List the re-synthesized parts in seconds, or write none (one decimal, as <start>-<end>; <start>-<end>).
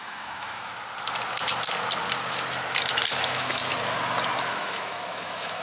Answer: 0.0-0.7; 3.1-3.7; 4.5-5.6